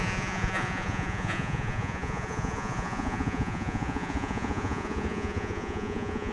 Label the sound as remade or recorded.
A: remade